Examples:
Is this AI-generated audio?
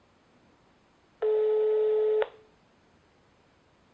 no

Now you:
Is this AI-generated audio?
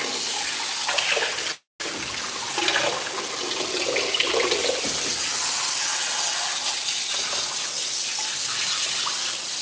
no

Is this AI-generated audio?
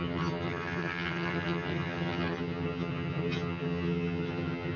yes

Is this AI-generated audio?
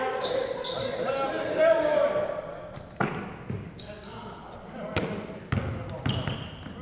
no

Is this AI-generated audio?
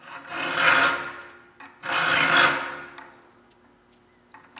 no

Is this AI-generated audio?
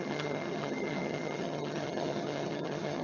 yes